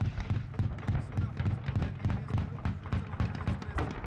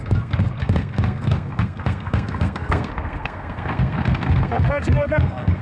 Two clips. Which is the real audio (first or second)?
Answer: first